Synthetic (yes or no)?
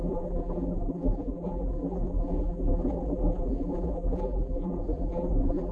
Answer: yes